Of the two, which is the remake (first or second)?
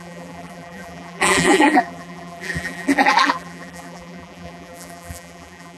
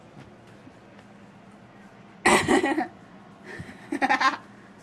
first